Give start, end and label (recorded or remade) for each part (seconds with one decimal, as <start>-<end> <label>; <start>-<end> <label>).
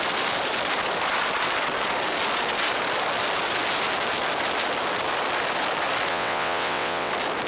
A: 0.0-6.1 recorded; 6.1-7.1 remade; 7.1-7.5 recorded